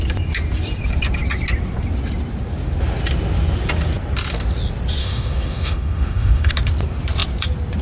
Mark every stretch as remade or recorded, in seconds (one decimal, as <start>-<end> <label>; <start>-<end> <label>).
0.0-5.0 recorded; 5.0-6.5 remade; 6.5-7.8 recorded